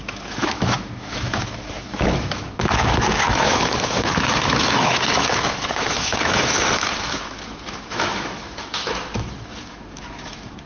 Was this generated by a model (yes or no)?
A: yes